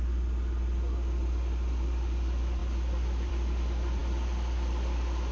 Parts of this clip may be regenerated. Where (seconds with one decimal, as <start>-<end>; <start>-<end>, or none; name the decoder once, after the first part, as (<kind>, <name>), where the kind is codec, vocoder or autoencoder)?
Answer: none